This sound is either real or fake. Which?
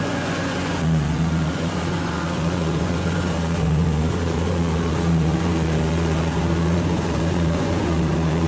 fake